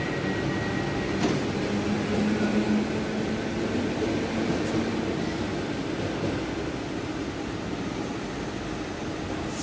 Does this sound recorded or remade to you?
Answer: recorded